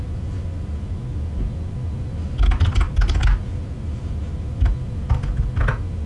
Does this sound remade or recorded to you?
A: recorded